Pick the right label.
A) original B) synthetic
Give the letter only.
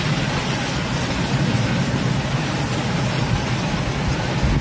A